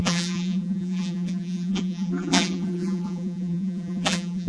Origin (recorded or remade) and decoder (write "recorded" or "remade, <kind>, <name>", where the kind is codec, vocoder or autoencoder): remade, vocoder, BigVGAN v2